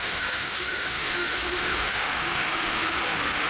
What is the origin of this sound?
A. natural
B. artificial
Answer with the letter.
B